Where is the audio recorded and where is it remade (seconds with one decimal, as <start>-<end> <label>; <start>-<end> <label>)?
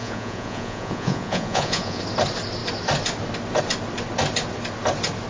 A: 0.0-2.0 remade; 2.0-5.3 recorded